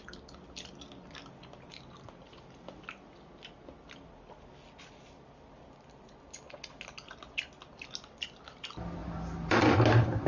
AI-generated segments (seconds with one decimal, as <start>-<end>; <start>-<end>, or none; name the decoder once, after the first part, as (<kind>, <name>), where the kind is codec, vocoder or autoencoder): none